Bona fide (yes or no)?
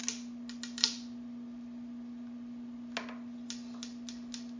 yes